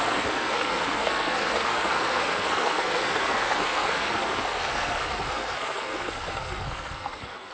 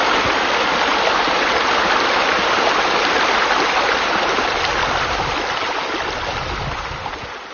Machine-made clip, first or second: first